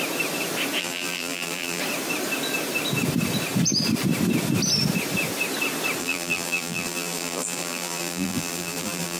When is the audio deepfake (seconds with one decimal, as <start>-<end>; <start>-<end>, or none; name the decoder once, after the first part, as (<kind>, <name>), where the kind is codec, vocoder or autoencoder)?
0.8-1.8 (vocoder, BigVGAN v2); 6.0-9.2